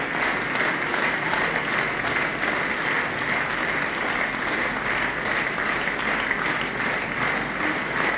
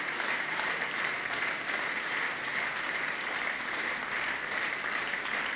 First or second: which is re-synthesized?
second